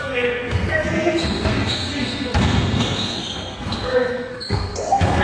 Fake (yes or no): yes